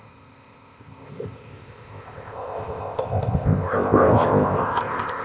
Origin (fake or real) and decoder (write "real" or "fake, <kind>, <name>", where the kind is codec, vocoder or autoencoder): fake, codec, ZipCodec